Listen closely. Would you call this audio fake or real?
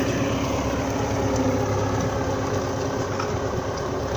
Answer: real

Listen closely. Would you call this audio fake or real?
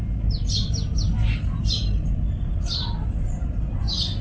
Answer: real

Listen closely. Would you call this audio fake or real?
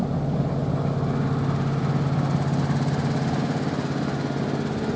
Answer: real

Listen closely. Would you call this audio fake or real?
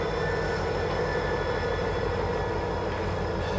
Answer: real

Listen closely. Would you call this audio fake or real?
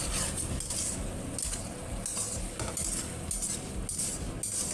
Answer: real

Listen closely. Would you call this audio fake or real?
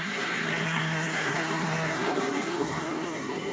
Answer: fake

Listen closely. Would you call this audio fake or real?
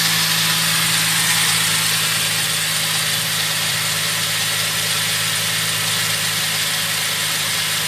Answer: real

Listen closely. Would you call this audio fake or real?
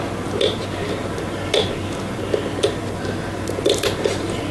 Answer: real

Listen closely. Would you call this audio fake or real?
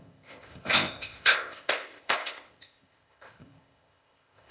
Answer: fake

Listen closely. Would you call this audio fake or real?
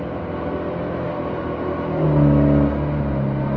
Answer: real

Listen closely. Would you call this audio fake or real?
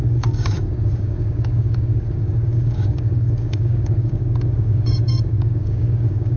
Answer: fake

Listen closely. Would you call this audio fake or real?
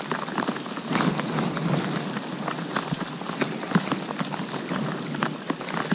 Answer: real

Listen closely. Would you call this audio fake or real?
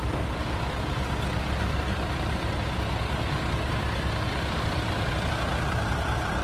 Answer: real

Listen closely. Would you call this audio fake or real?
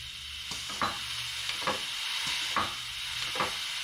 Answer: real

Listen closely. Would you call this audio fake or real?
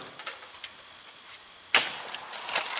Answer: real